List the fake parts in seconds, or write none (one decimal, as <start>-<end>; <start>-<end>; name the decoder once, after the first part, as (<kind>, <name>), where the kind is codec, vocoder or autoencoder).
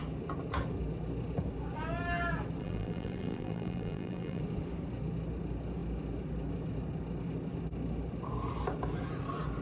2.6-4.4 (vocoder, BigVGAN v2)